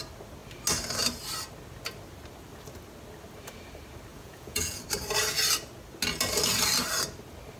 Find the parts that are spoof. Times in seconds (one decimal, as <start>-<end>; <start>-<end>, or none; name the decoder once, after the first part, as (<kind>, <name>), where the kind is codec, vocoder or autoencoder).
4.1-4.8 (vocoder, Vocos)